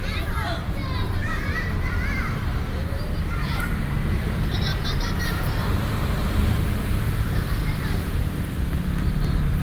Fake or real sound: fake